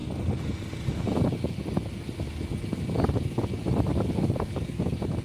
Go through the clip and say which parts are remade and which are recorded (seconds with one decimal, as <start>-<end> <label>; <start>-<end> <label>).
0.0-3.9 recorded; 3.9-5.2 remade